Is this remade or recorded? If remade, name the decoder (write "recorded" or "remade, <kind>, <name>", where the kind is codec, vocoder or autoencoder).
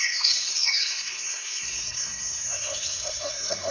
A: remade, codec, SNAC